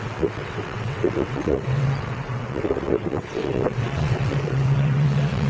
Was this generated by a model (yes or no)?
yes